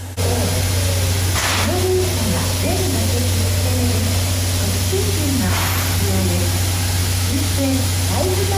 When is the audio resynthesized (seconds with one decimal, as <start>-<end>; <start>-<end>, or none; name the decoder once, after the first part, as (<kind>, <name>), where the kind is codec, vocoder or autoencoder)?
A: 7.0-7.8 (autoencoder, DAC-VAE)